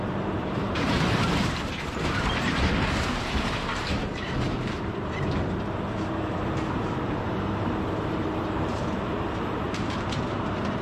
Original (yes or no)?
no